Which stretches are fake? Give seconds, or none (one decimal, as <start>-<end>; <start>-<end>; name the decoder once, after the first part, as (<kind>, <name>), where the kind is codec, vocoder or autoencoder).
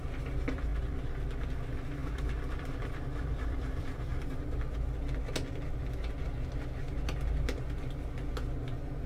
0.0-0.7 (vocoder, BigVGAN v2); 1.4-4.1